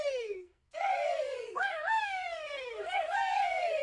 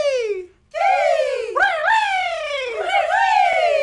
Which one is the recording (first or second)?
second